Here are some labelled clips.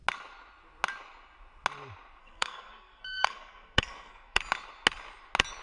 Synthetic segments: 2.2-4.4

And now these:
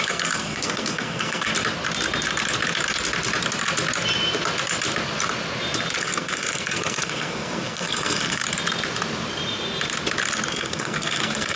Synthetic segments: 0.0-1.5; 6.0-8.4; 10.5-11.6

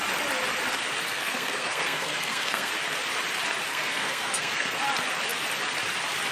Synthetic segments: 1.1-2.7; 3.7-4.8

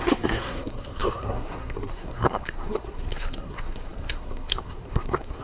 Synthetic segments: 0.0-5.4

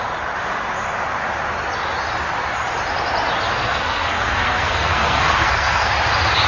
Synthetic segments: 3.5-5.9

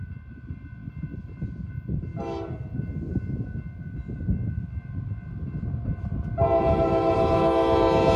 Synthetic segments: none